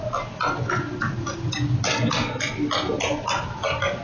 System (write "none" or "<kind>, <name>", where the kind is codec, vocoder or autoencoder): none